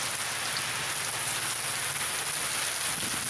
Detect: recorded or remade recorded